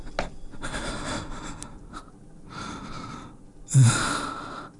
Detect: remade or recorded recorded